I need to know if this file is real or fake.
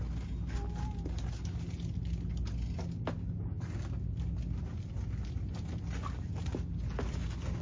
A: real